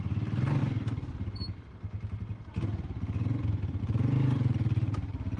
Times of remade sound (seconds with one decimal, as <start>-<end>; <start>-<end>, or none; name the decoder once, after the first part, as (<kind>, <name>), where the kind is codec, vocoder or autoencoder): none